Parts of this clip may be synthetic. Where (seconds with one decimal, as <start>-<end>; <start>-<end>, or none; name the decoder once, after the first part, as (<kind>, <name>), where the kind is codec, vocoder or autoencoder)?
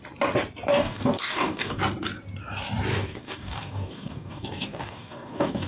0.7-1.8 (codec, DAC); 2.9-5.7